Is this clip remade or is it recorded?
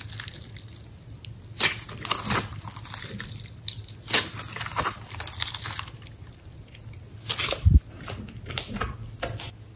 recorded